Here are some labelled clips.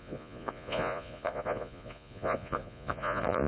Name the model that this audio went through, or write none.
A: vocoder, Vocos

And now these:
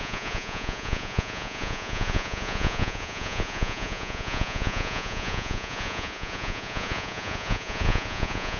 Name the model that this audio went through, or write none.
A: vocoder, Vocos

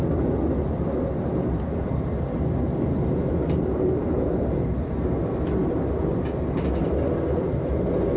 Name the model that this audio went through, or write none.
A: none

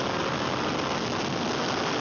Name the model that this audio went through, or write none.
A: none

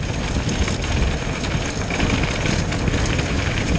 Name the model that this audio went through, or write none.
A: none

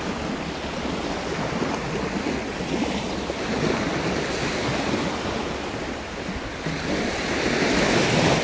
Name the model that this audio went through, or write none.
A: none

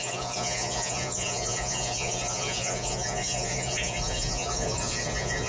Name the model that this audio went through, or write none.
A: vocoder, Vocos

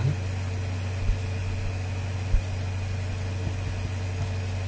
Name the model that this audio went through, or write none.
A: none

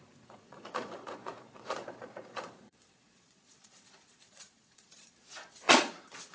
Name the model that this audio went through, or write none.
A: vocoder, Vocos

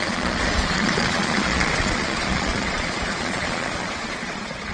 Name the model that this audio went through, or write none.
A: vocoder, Vocos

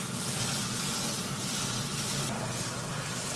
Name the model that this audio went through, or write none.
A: none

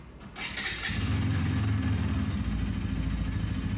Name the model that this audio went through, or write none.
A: none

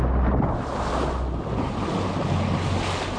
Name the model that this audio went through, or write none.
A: none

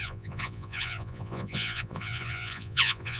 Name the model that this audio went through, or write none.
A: vocoder, Vocos